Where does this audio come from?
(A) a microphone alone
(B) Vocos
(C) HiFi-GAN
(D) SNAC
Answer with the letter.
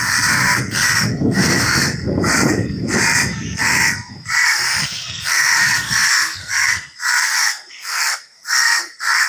D